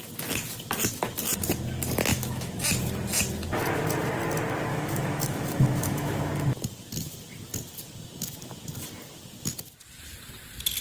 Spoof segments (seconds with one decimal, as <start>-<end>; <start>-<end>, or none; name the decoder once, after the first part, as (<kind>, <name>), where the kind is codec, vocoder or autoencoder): 2.1-2.6 (autoencoder, DAC-VAE); 4.7-6.3